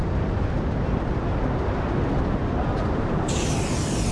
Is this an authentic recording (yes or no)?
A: yes